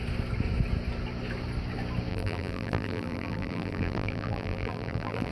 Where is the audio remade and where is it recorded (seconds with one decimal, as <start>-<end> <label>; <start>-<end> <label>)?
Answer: 0.0-2.1 recorded; 2.1-5.3 remade